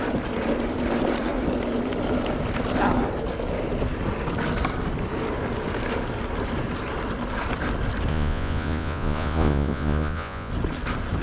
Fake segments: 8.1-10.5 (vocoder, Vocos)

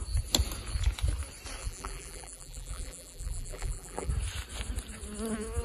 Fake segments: 1.6-4.1 (vocoder, BigVGAN v2)

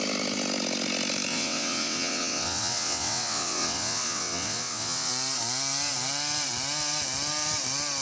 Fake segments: 1.3-5.1 (vocoder, WaveNeXt)